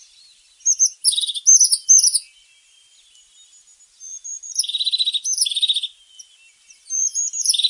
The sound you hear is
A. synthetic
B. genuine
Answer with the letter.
B